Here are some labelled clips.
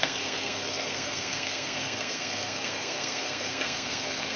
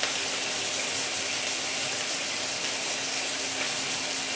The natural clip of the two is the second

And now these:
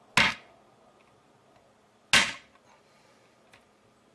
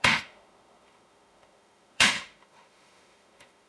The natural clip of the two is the first